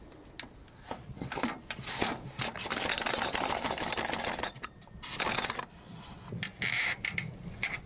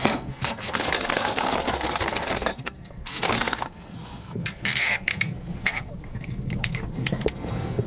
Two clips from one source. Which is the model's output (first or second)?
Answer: second